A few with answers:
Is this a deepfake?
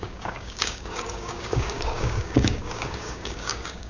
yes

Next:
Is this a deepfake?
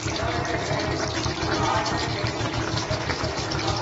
no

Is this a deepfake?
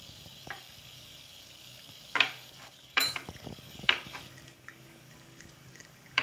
yes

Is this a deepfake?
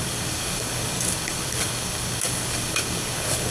yes